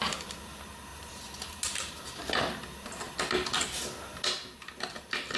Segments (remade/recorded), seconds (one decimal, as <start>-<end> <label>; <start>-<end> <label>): 0.0-0.9 recorded; 0.9-2.1 remade; 2.1-5.4 recorded